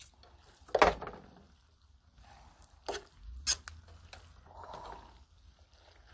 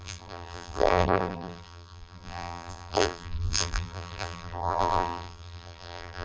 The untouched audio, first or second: first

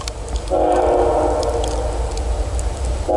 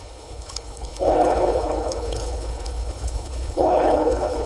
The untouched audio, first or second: first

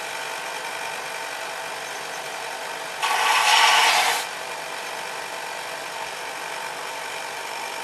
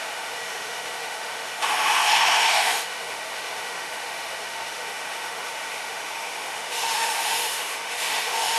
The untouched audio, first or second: first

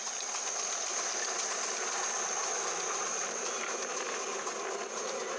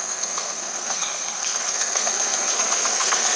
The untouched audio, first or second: first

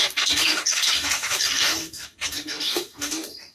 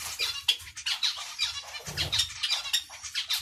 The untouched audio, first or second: second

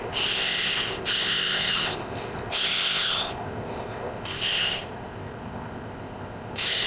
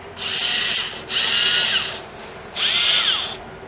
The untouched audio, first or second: second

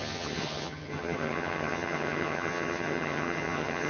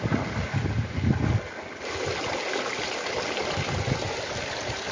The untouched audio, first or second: second